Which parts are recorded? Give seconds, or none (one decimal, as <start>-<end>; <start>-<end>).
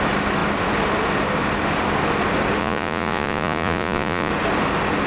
0.0-2.6; 4.3-5.1